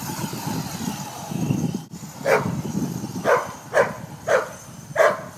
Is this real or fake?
real